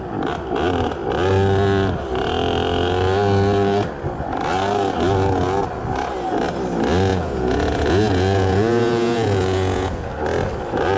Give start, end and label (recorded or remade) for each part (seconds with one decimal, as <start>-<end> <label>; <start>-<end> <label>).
0.0-7.1 recorded; 7.1-10.1 remade; 10.1-11.0 recorded